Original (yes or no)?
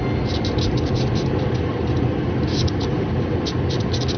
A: yes